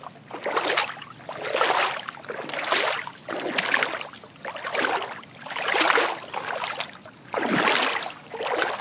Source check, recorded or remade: recorded